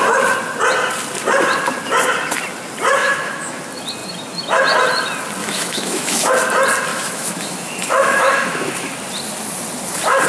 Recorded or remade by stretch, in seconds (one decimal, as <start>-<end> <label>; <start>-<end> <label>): 0.0-3.0 recorded; 3.0-3.6 remade; 3.6-5.4 recorded; 5.4-6.3 remade; 6.3-6.9 recorded; 6.9-8.9 remade; 8.9-10.3 recorded